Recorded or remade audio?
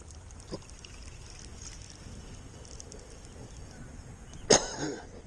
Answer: recorded